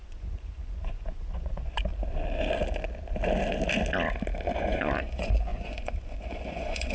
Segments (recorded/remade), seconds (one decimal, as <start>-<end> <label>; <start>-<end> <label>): 0.0-1.9 remade; 1.9-4.6 recorded; 4.6-6.9 remade